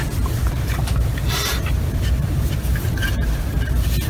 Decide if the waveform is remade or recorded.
remade